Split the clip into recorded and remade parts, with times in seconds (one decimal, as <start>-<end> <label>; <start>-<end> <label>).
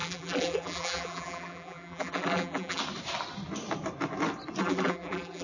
0.0-2.8 remade; 2.8-4.6 recorded; 4.6-5.4 remade